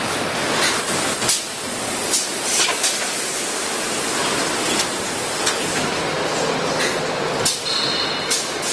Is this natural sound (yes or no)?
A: yes